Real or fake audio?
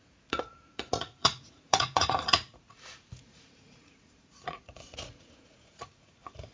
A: fake